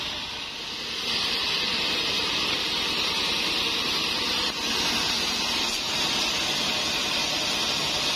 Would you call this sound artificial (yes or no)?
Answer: no